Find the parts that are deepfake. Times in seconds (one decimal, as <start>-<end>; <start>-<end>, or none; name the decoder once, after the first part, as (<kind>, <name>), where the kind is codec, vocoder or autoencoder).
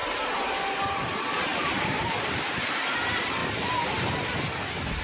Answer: 0.0-0.6 (vocoder, BigVGAN v2); 1.5-2.8